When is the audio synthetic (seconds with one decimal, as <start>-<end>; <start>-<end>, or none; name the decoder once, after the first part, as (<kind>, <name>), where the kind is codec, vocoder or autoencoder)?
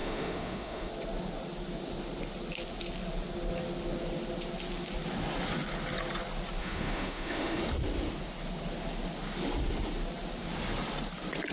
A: 0.0-0.9 (autoencoder, DAC-VAE); 6.6-7.6